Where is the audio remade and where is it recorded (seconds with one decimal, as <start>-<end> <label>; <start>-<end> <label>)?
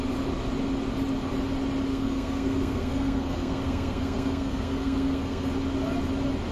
0.0-1.9 recorded; 1.9-5.5 remade; 5.5-6.5 recorded